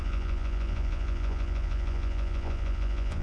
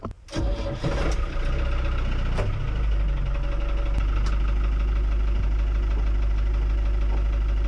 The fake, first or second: first